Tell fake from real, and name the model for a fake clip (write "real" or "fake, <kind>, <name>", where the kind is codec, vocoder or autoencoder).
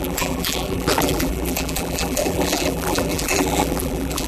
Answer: fake, vocoder, BigVGAN v2